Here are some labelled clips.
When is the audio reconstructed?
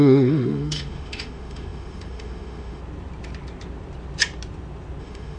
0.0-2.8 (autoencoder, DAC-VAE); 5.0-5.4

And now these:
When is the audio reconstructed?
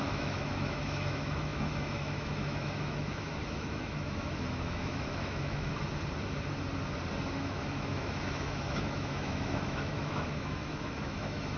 0.0-5.7 (autoencoder, DAC-VAE); 7.4-11.6